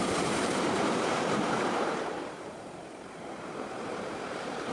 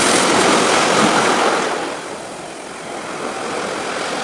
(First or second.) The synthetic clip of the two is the first